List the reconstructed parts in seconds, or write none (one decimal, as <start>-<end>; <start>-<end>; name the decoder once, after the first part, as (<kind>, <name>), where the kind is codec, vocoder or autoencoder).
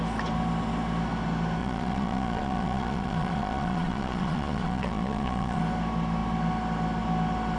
1.6-5.6 (vocoder, Vocos)